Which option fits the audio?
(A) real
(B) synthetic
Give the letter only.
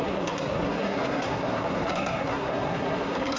B